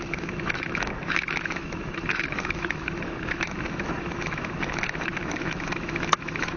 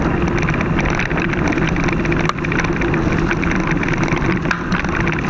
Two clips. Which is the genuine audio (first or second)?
second